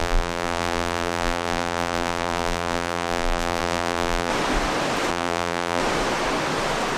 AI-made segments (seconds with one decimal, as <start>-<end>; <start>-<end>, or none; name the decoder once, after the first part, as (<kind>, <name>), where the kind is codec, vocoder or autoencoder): 0.0-4.3 (vocoder, BigVGAN v2); 5.1-5.8